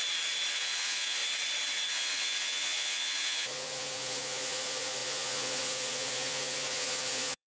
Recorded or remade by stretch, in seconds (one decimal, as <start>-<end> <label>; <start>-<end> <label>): 0.0-0.5 recorded; 0.5-1.2 remade; 1.2-1.9 recorded; 1.9-7.5 remade